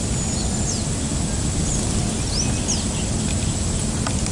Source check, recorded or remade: recorded